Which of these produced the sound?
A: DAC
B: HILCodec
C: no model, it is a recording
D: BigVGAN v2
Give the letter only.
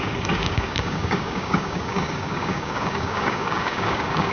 A